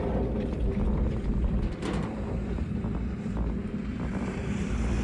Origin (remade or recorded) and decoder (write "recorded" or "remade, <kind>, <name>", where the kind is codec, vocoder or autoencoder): remade, vocoder, BigVGAN v2